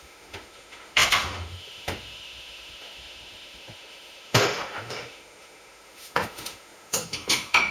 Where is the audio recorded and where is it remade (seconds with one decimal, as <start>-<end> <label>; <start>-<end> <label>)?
0.0-7.7 remade